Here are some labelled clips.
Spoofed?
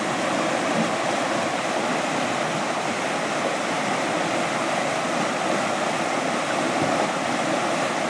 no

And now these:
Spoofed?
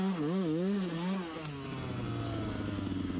no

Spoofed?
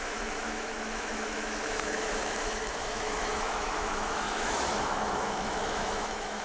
yes